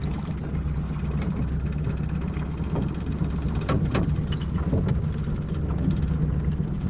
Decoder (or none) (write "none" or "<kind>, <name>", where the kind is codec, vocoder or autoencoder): none